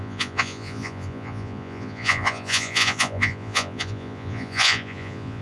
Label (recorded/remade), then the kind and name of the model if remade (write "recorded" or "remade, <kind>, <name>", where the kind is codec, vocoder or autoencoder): remade, vocoder, Vocos